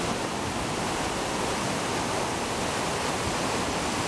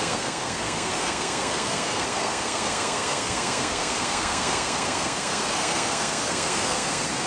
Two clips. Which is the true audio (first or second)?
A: first